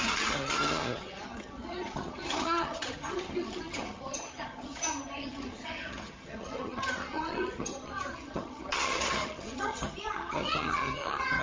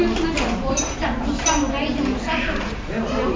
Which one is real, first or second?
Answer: second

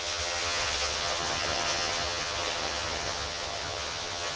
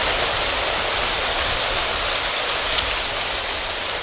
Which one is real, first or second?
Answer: second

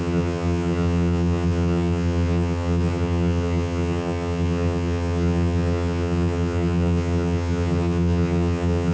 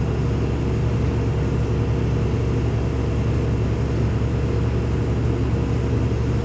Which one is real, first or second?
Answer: second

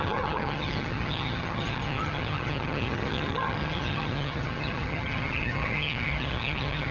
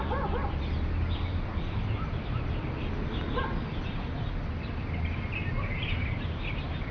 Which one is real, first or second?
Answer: second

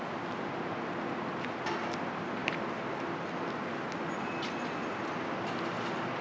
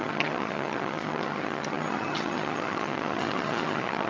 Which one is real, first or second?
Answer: first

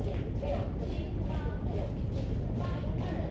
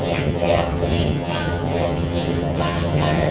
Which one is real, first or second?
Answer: first